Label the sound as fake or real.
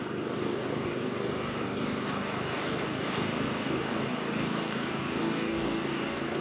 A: fake